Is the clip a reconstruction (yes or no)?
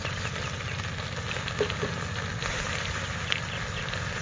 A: no